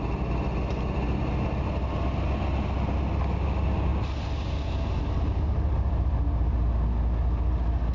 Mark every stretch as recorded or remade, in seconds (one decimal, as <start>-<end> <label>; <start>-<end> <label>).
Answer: 0.0-7.9 recorded